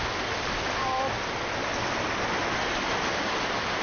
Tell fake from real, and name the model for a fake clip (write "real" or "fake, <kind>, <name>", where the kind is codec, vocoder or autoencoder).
real